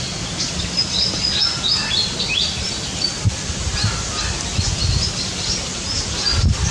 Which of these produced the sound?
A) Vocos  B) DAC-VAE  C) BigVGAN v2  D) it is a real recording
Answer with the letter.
D